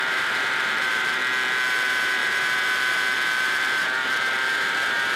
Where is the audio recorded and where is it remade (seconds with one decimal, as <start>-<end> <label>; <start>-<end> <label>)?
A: 0.0-1.2 remade; 1.2-1.7 recorded; 1.7-5.2 remade